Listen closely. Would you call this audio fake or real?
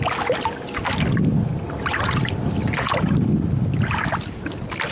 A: real